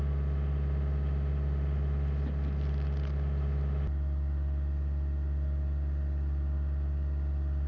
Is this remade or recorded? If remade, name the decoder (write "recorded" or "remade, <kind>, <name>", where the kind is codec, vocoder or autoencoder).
recorded